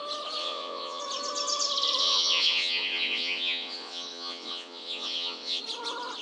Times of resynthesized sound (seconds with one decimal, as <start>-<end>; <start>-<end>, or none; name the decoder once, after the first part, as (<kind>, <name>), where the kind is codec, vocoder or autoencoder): 0.4-1.0 (vocoder, WaveNeXt); 2.0-5.6